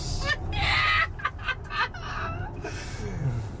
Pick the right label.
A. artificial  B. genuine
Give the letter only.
B